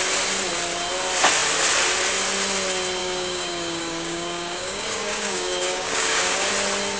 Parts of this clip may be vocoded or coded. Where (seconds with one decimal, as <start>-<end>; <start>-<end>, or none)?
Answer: 3.0-6.5